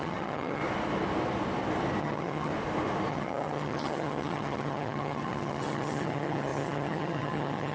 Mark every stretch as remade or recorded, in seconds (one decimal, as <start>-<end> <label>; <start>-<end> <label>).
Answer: 0.0-0.6 remade; 0.6-2.0 recorded; 2.0-2.5 remade; 2.5-3.1 recorded; 3.1-7.7 remade